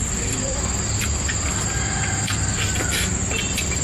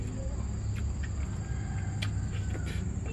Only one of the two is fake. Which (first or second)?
first